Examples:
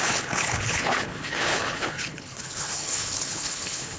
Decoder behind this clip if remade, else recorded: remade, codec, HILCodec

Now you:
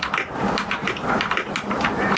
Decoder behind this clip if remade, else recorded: recorded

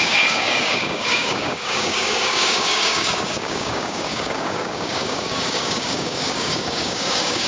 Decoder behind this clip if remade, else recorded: remade, codec, DAC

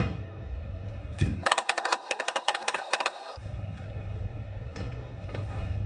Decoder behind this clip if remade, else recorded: remade, codec, SNAC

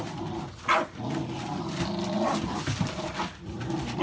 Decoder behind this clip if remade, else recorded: recorded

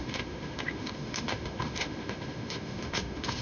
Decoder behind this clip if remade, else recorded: remade, autoencoder, DAC-VAE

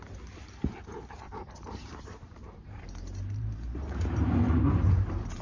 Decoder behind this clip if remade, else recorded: remade, vocoder, BigVGAN v2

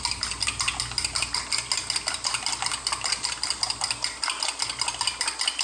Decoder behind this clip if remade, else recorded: recorded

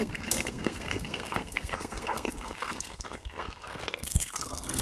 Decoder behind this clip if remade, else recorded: remade, codec, SNAC